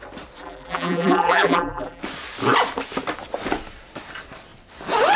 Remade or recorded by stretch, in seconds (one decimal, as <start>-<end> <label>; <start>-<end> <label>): 0.0-0.4 recorded; 0.4-2.0 remade; 2.0-5.2 recorded